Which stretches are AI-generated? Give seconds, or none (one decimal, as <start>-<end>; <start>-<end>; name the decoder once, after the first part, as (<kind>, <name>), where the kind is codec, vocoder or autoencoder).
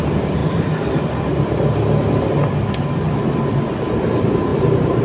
0.4-1.0 (vocoder, BigVGAN v2); 4.5-5.0